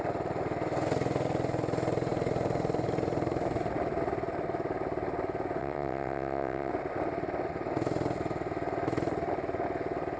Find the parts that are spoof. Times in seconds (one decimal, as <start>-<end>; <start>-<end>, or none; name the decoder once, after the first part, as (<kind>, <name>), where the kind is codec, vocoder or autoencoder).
5.6-6.7 (vocoder, WaveNeXt)